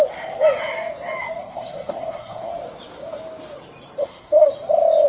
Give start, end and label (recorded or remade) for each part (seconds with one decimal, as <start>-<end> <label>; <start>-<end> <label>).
0.0-1.4 recorded; 1.4-2.5 remade; 2.5-4.0 recorded; 4.0-4.5 remade; 4.5-5.1 recorded